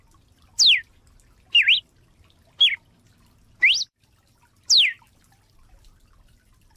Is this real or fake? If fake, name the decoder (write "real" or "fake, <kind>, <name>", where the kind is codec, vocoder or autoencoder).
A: real